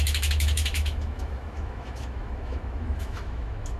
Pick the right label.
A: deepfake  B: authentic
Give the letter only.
A